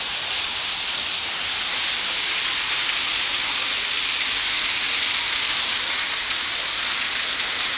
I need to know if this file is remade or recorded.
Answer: recorded